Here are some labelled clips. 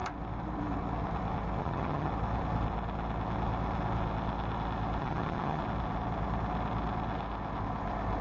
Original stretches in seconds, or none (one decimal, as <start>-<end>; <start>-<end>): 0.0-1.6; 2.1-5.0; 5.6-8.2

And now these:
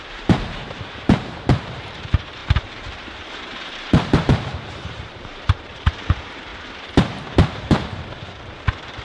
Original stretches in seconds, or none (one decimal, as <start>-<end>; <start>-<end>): 6.5-7.5

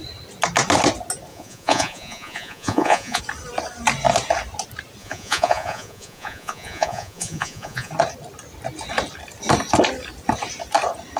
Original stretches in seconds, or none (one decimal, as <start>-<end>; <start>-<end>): 0.0-1.3; 3.2-5.0; 7.9-11.2

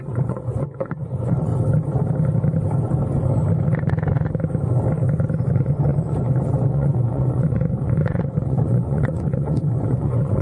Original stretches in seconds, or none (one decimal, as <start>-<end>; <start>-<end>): 1.5-5.4